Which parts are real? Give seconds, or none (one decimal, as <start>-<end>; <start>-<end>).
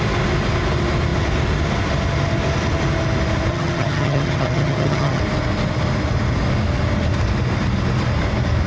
0.0-3.5; 5.2-8.7